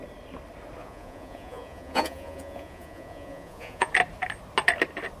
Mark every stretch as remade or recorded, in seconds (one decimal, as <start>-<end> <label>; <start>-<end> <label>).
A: 0.0-0.8 recorded; 0.8-3.9 remade; 3.9-5.2 recorded